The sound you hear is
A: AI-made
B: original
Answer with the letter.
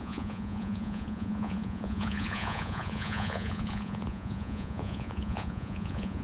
A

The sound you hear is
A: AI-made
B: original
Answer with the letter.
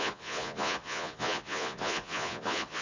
A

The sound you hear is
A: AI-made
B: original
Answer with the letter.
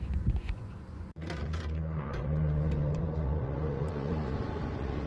A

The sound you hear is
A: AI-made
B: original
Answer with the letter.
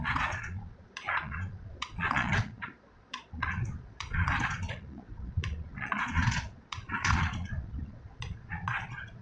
A